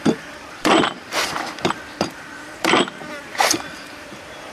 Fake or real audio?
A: fake